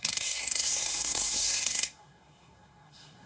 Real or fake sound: fake